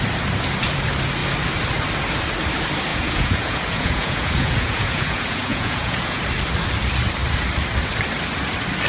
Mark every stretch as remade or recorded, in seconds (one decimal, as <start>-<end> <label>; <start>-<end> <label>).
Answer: 0.0-2.9 recorded; 2.9-6.2 remade; 6.2-8.9 recorded